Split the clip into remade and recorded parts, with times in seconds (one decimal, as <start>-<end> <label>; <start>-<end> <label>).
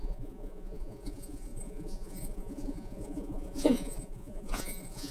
0.0-5.1 remade